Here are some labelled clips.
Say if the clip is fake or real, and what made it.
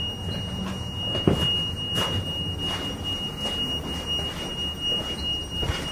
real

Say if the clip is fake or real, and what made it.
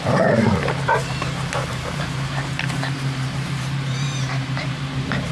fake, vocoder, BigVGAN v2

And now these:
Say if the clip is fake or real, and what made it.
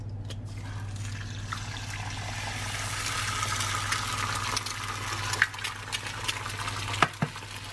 real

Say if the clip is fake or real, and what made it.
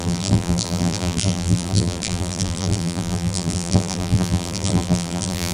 fake, vocoder, BigVGAN v2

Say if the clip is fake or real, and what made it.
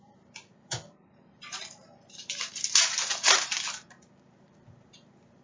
fake, vocoder, BigVGAN v2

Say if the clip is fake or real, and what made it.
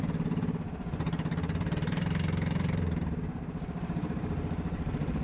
fake, vocoder, BigVGAN v2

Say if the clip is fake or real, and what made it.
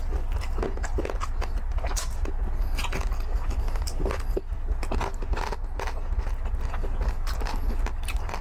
real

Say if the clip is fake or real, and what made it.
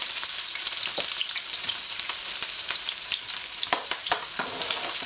fake, vocoder, BigVGAN v2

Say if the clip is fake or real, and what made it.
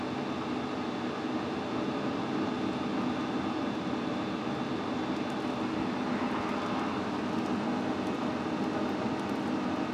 real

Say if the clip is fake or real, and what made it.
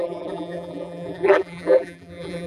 fake, vocoder, BigVGAN v2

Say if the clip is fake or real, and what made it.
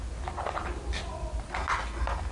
real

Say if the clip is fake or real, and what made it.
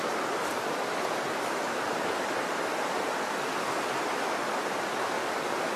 real